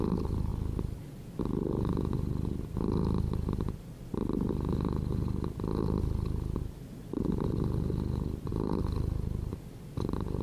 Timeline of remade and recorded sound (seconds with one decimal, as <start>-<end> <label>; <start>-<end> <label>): 0.0-8.5 recorded; 8.5-9.5 remade; 9.5-10.4 recorded